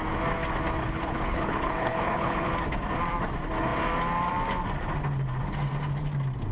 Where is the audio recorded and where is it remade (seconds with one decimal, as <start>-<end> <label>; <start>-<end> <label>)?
0.0-0.8 recorded; 0.8-2.5 remade; 2.5-6.5 recorded